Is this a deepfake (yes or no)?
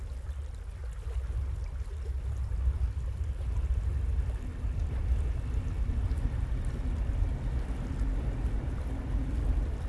no